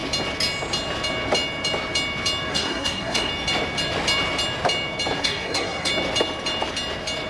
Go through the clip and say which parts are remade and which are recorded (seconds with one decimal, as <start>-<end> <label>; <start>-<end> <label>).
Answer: 0.0-2.5 recorded; 2.5-3.3 remade; 3.3-5.2 recorded; 5.2-5.9 remade; 5.9-7.3 recorded